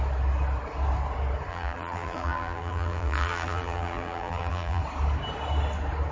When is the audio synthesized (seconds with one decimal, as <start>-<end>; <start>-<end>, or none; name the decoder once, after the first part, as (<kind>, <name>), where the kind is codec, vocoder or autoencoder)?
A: 1.5-4.8 (vocoder, BigVGAN v2)